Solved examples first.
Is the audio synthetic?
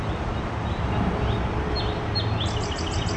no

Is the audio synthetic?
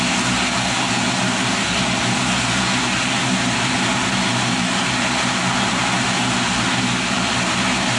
no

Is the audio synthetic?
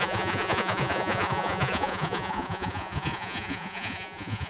yes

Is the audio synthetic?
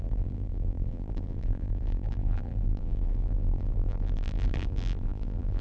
yes